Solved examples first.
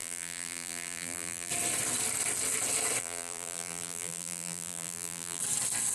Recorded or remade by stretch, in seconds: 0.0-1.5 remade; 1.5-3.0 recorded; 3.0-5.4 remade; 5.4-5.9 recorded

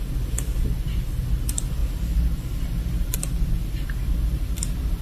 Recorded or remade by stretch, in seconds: 0.0-5.0 recorded